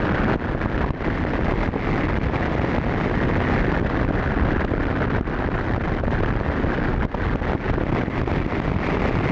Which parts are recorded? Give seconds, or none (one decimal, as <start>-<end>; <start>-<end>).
0.0-9.3